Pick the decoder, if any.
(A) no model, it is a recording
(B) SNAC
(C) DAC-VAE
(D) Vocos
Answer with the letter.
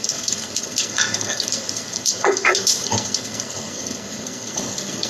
B